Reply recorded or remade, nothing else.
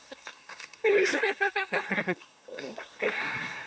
remade